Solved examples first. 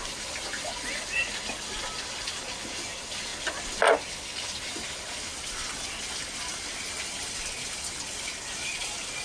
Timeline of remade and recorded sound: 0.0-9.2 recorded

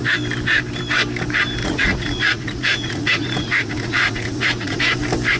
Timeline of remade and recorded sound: 0.0-1.6 recorded; 1.6-4.8 remade; 4.8-5.4 recorded

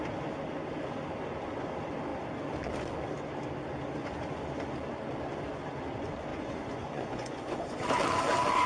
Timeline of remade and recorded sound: 0.0-4.0 recorded; 4.0-4.5 remade; 4.5-6.3 recorded; 6.3-7.8 remade; 7.8-8.7 recorded

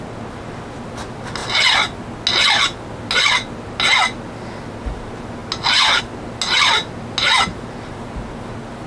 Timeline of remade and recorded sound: 0.0-8.9 recorded

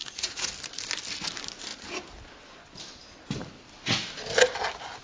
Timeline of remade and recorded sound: 0.0-0.5 remade; 0.5-5.0 recorded